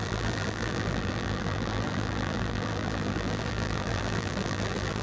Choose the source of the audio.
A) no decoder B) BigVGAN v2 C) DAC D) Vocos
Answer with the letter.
B